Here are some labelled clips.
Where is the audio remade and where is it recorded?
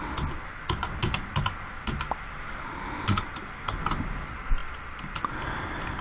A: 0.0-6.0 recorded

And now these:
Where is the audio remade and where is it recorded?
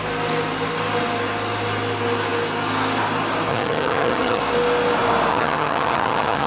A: 0.0-3.5 recorded; 3.5-4.4 remade; 4.4-5.3 recorded; 5.3-6.5 remade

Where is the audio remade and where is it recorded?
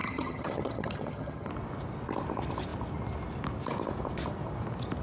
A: 0.0-1.5 remade; 1.5-5.0 recorded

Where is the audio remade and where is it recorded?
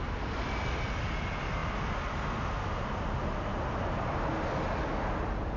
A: 0.0-5.6 recorded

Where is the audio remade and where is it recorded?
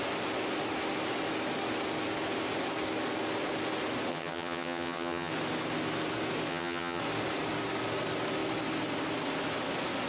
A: 0.0-4.1 recorded; 4.1-5.3 remade; 5.3-6.5 recorded; 6.5-7.0 remade; 7.0-10.1 recorded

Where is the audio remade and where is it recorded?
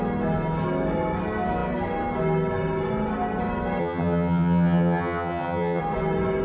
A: 0.0-3.8 recorded; 3.8-5.8 remade; 5.8-6.4 recorded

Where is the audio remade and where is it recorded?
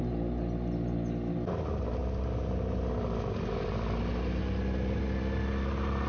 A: 0.0-6.1 recorded